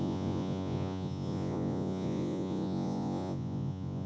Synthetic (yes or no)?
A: yes